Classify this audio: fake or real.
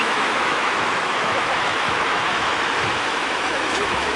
fake